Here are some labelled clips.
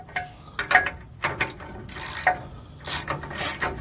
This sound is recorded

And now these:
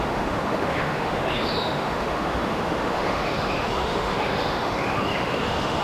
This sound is remade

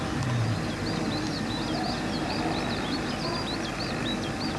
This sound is recorded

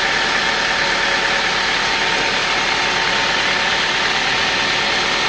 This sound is recorded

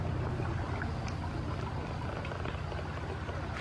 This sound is recorded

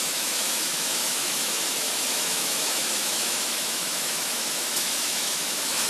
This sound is remade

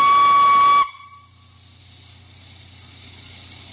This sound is recorded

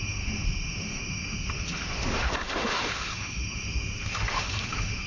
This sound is remade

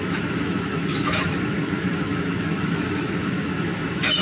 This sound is remade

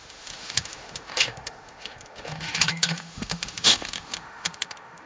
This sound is remade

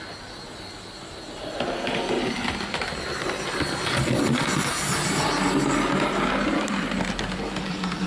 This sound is recorded